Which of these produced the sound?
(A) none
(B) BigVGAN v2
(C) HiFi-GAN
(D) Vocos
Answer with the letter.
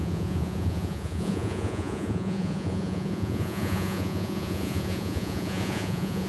D